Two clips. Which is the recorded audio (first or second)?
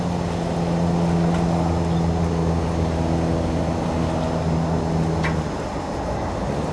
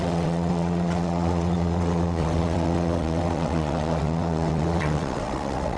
first